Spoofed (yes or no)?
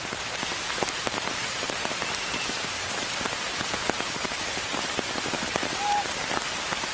yes